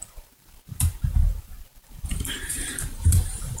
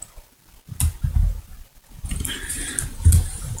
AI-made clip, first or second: first